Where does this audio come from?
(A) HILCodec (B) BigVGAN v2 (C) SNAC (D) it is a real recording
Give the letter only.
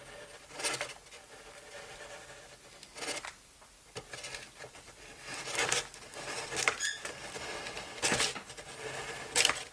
D